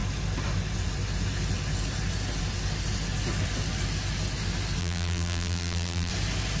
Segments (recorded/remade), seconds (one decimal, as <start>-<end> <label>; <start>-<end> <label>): 0.0-4.8 recorded; 4.8-6.1 remade; 6.1-6.6 recorded

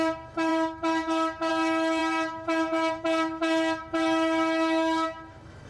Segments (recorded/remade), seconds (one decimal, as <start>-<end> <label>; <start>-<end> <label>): 0.0-5.7 remade

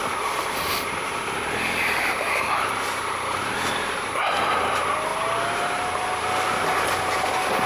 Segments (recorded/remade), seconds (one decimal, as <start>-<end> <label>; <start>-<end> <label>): 0.0-7.7 recorded

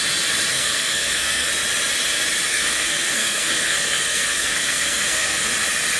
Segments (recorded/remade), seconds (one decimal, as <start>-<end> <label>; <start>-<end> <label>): 0.0-0.5 recorded; 0.5-1.5 remade; 1.5-2.5 recorded; 2.5-5.5 remade; 5.5-6.0 recorded

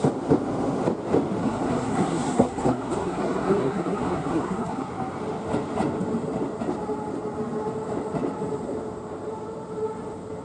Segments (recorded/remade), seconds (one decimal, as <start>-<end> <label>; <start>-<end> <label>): 0.0-1.4 recorded; 1.4-4.9 remade; 4.9-10.4 recorded